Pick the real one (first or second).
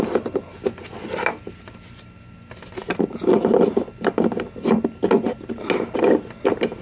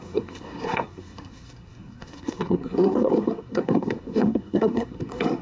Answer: first